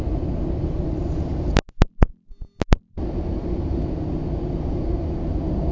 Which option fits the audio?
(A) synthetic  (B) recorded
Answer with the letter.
B